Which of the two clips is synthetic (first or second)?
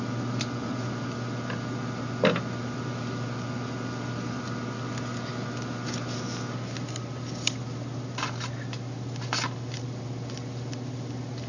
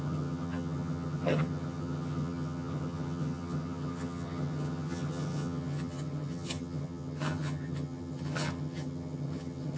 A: second